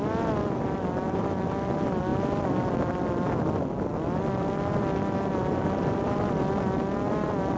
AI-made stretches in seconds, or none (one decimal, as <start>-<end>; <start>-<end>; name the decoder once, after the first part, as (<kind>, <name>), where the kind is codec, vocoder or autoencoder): none